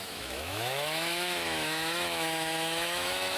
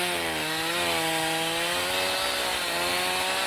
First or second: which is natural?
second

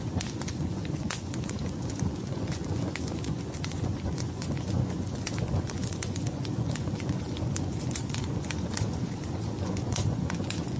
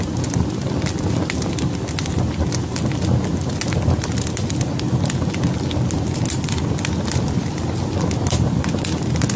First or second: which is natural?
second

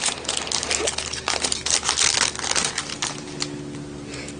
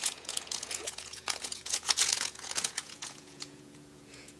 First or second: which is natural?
first